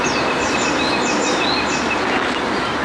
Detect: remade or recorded recorded